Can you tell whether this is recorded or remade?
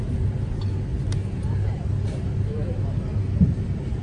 recorded